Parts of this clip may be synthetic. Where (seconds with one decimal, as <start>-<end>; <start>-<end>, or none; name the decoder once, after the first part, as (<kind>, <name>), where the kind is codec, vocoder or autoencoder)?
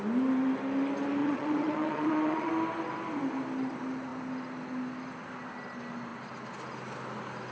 1.2-2.5 (vocoder, Vocos)